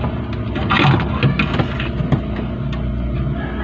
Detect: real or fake real